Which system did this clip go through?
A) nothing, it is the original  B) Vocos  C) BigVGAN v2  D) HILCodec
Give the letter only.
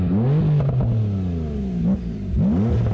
A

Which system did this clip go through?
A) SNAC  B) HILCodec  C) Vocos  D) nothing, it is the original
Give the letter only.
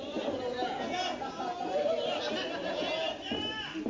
D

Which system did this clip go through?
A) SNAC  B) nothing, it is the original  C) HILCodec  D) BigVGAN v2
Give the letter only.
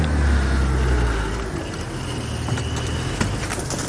B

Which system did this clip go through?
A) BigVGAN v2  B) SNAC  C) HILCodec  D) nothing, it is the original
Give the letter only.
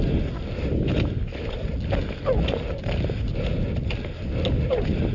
D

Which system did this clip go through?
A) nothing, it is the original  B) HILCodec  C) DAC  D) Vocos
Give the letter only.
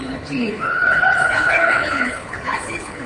B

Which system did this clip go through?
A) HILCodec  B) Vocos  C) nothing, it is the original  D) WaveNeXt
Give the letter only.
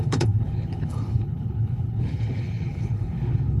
A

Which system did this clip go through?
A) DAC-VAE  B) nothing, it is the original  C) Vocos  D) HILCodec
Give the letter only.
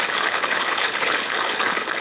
D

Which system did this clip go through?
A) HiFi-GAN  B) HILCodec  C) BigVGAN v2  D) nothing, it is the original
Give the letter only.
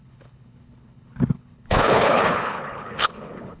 B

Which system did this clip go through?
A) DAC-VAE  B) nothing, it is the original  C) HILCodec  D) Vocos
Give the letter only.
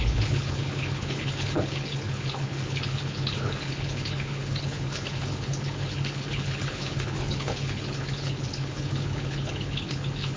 C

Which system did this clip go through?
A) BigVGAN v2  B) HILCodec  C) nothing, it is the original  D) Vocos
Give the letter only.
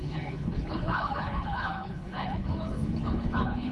B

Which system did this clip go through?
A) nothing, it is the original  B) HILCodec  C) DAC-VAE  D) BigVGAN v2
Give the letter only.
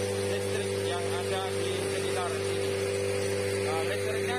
A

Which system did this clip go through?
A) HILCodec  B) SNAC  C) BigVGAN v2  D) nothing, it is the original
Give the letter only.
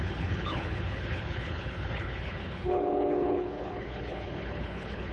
A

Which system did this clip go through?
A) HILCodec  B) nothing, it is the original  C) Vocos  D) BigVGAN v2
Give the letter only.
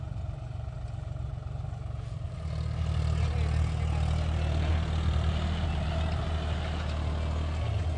B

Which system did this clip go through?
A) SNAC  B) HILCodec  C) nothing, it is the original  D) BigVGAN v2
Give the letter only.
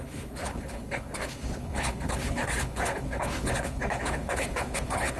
B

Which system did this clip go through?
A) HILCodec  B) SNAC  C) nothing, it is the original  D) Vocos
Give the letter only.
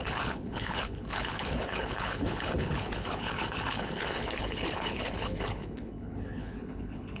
A